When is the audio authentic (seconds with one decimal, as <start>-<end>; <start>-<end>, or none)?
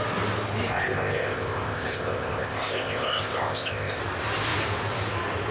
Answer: 0.0-0.7; 4.0-5.5